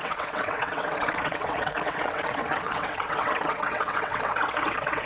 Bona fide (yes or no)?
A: no